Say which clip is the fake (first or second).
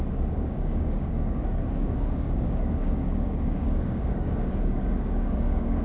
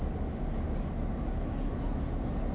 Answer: first